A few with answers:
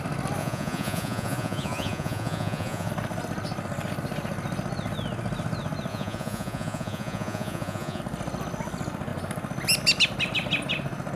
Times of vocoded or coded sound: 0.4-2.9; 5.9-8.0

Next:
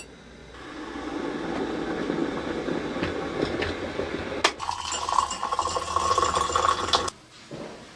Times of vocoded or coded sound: none

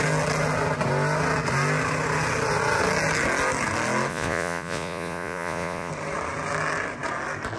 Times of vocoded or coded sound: 4.1-5.9

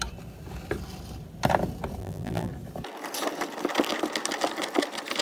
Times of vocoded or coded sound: 2.0-2.5

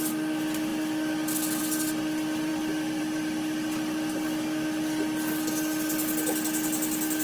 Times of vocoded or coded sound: none

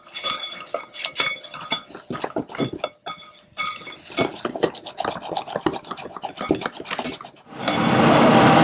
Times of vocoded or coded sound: none

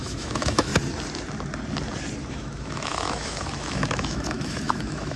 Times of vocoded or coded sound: 0.0-0.7; 2.3-5.2